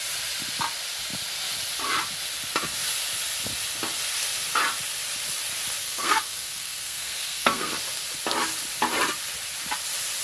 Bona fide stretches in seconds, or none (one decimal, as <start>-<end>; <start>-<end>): 0.0-5.8; 7.7-10.2